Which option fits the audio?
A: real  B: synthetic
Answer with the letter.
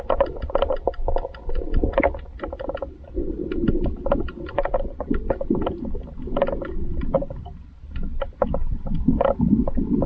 A